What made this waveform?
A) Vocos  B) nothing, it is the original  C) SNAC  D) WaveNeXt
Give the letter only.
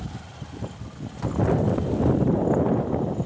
B